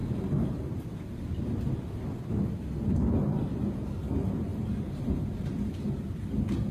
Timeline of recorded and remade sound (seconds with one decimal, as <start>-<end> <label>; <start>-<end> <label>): 0.0-4.5 recorded; 4.5-6.7 remade